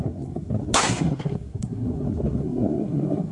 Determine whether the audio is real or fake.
fake